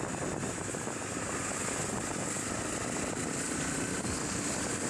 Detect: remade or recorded recorded